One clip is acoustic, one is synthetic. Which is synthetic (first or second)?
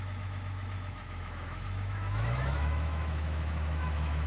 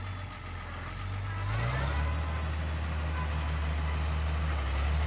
first